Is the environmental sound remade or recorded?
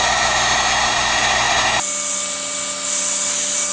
recorded